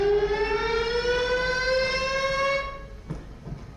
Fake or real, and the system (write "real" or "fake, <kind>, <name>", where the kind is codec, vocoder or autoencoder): real